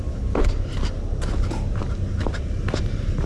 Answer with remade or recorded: recorded